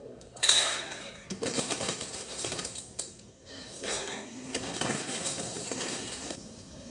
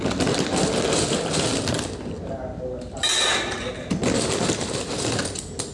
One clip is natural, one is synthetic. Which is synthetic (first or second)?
first